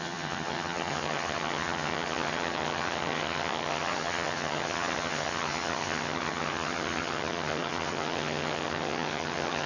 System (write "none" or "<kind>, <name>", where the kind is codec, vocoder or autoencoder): vocoder, HiFi-GAN